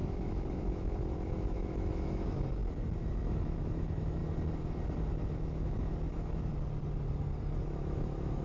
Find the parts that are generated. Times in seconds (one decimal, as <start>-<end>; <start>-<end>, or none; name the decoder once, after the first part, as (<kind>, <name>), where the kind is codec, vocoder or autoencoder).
0.0-2.6 (autoencoder, DAC-VAE); 3.1-4.2; 5.1-6.5; 7.6-8.4